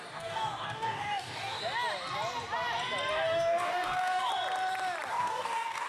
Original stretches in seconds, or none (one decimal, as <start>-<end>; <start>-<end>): 1.6-3.1; 4.3-5.1